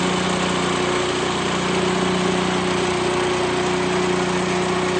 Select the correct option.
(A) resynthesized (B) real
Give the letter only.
B